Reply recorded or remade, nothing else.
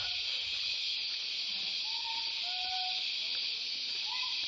recorded